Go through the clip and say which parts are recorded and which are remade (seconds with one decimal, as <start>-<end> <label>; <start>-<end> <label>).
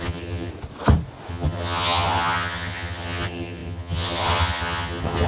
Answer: 0.0-0.5 remade; 0.5-1.3 recorded; 1.3-5.3 remade